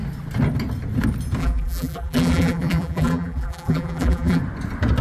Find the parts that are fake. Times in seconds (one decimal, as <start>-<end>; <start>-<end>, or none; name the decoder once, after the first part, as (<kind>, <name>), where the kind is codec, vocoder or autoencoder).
1.4-4.4 (vocoder, BigVGAN v2)